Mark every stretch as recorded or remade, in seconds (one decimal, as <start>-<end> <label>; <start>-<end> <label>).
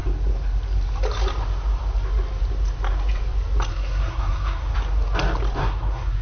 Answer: 0.0-3.7 recorded; 3.7-4.7 remade; 4.7-5.6 recorded; 5.6-6.2 remade